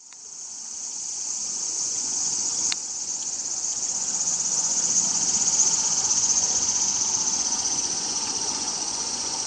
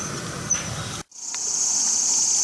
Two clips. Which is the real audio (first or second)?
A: second